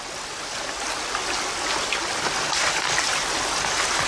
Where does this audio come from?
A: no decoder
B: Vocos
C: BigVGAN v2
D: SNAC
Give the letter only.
A